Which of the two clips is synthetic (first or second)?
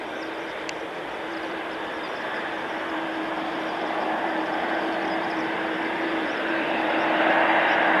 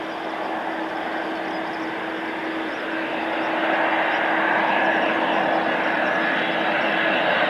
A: first